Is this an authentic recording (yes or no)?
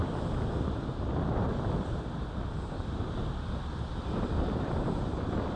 no